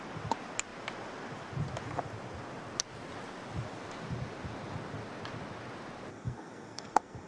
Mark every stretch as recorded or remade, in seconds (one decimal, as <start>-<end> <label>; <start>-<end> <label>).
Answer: 0.0-6.1 recorded; 6.1-7.3 remade